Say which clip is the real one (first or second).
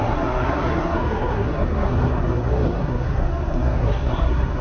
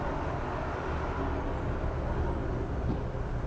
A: second